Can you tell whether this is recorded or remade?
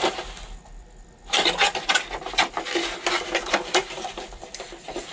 recorded